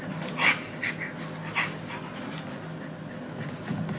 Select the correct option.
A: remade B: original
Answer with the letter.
B